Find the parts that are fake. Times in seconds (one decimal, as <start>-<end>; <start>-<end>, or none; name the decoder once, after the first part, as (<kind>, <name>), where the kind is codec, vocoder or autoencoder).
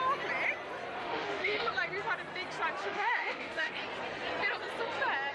1.0-1.7 (autoencoder, DAC-VAE); 2.8-3.7